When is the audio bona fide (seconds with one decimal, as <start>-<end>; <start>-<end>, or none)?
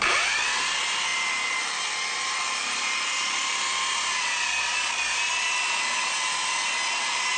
0.0-7.4